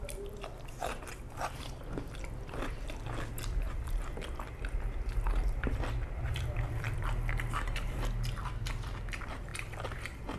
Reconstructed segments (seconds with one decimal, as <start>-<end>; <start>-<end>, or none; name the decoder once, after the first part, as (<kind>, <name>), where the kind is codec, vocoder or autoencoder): 0.0-10.4 (vocoder, BigVGAN v2)